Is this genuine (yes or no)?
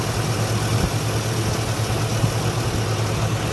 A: yes